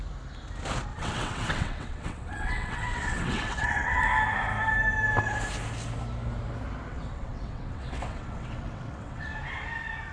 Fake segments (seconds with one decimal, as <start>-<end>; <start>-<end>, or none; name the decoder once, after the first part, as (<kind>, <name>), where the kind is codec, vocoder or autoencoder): 0.9-4.0 (vocoder, WaveNeXt); 6.9-9.3